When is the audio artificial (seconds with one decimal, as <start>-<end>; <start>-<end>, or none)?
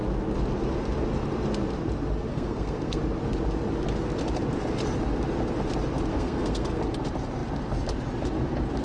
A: 2.3-3.0; 6.1-6.8